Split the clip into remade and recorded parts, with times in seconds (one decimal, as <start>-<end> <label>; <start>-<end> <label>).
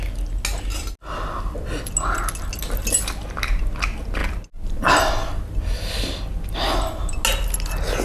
0.0-8.0 recorded